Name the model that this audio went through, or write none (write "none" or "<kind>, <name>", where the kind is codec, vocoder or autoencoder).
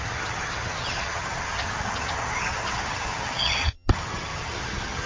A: vocoder, HiFi-GAN